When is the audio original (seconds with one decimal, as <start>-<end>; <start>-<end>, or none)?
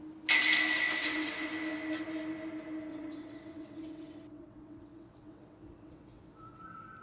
0.0-1.0; 1.5-2.9; 6.6-7.0